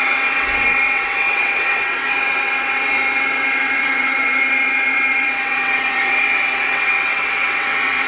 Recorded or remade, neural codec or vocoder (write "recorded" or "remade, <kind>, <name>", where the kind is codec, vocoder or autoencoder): remade, vocoder, WaveNeXt